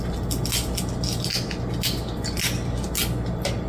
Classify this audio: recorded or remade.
recorded